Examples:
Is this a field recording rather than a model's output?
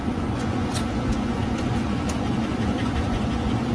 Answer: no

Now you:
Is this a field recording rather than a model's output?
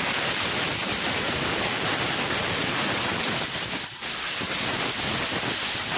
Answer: yes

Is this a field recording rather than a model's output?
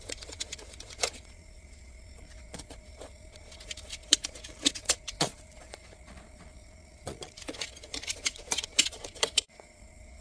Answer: no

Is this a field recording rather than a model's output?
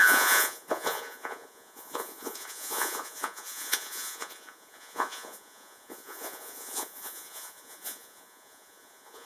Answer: no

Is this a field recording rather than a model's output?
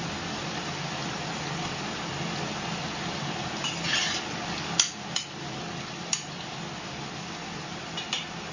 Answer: yes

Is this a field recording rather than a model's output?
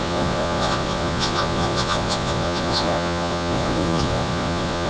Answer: no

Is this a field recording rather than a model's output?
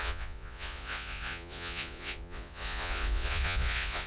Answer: no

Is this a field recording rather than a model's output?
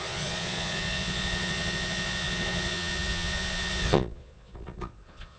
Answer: no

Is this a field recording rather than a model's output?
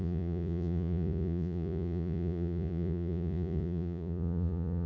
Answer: no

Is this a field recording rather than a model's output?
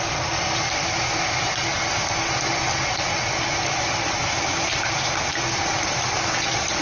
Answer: yes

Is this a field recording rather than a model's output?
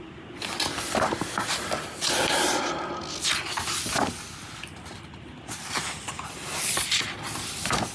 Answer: yes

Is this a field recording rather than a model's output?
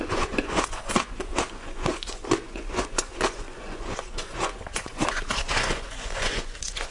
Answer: no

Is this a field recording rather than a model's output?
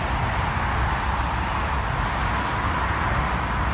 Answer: yes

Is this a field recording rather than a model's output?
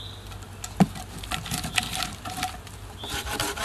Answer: yes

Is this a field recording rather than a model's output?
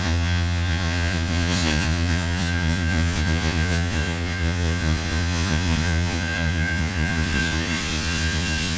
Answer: no